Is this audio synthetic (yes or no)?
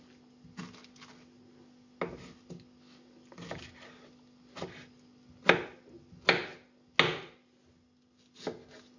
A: no